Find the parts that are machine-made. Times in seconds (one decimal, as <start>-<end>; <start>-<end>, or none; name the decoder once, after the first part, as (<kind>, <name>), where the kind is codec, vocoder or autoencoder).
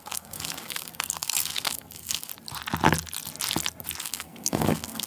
0.0-2.3 (codec, SNAC); 4.0-5.1